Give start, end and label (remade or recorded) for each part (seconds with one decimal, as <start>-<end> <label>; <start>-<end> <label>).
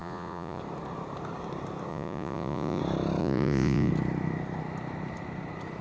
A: 0.0-0.6 remade; 0.6-1.9 recorded; 1.9-2.8 remade; 2.8-3.2 recorded; 3.2-3.9 remade; 3.9-5.8 recorded